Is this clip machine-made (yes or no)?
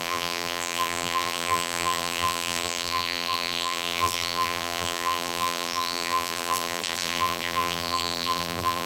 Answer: yes